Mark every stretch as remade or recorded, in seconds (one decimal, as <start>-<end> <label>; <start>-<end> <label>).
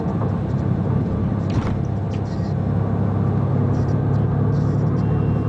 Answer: 0.0-1.6 remade; 1.6-3.5 recorded; 3.5-5.5 remade